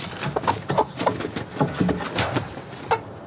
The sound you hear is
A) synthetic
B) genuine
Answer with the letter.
B